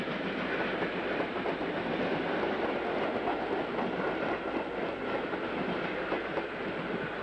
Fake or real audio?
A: real